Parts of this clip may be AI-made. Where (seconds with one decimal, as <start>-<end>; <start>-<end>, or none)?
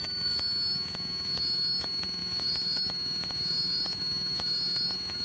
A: 0.0-5.2